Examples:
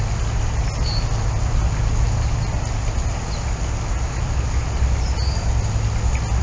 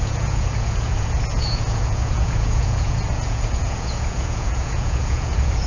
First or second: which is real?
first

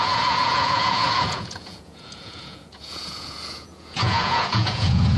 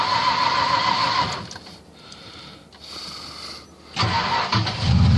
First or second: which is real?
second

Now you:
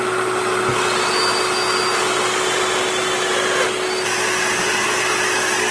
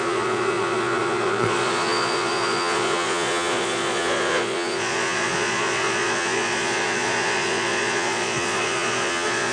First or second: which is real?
first